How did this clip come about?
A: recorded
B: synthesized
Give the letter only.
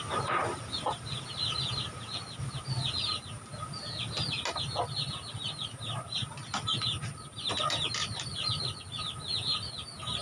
A